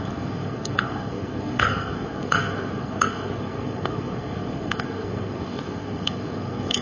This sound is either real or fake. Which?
fake